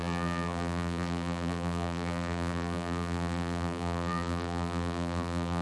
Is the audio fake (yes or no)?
yes